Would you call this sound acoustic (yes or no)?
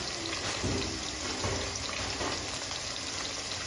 yes